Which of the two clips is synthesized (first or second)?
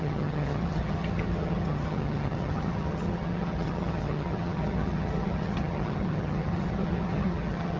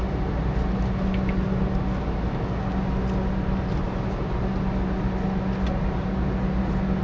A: first